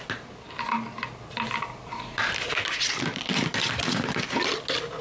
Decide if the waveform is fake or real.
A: real